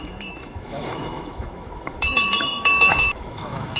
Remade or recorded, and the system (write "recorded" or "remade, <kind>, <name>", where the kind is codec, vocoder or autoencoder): remade, autoencoder, DAC-VAE